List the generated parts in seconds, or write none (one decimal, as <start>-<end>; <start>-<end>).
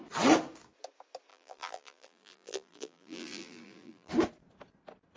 1.3-4.1